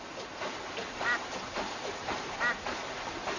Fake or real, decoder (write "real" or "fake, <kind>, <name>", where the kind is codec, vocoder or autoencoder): real